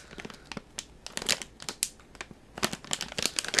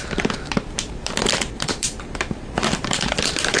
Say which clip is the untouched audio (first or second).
first